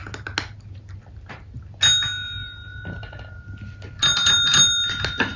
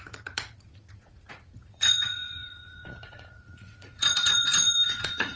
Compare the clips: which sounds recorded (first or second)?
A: first